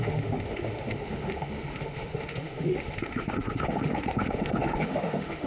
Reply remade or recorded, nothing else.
remade